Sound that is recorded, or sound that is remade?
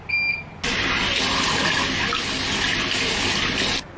recorded